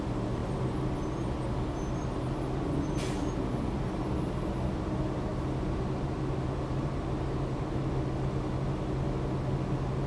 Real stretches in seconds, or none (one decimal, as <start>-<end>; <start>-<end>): 0.0-10.1